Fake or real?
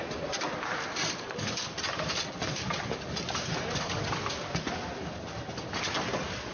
real